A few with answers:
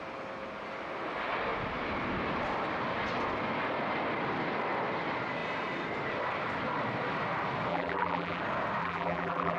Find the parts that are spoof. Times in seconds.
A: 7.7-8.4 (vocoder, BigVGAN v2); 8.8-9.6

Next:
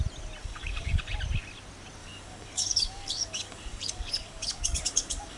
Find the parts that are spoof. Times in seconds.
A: 0.4-1.0 (codec, DAC); 2.0-5.4

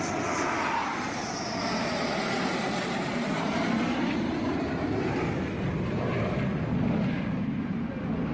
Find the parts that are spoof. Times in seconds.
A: 0.8-4.9 (vocoder, BigVGAN v2)

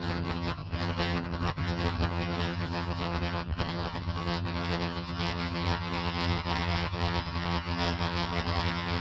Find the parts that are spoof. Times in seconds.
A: 0.0-9.0 (vocoder, HiFi-GAN)